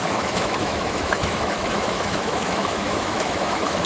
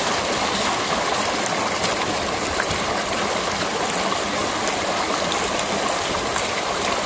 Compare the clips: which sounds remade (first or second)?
first